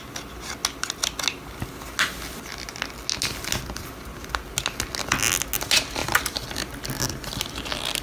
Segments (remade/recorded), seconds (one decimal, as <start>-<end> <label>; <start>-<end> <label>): 0.0-8.0 recorded